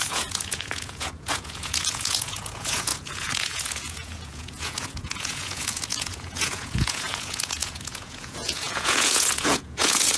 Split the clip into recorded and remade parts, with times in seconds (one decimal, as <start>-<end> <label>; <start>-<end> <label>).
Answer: 0.0-10.2 remade